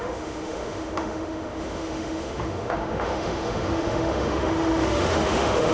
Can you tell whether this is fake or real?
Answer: fake